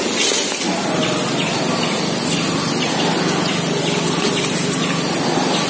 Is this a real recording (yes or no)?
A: yes